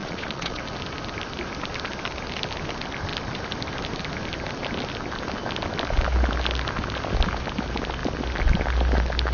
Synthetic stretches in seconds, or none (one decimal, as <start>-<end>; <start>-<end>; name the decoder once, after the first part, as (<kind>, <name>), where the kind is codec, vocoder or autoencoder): 0.0-0.6 (vocoder, Vocos)